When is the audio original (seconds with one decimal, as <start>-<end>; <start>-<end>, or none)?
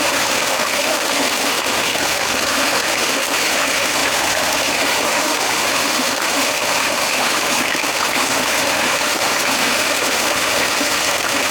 none